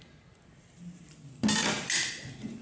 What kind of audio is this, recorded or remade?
recorded